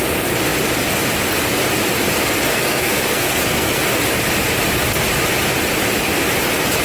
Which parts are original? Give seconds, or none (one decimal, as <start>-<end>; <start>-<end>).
0.0-2.5; 3.8-6.8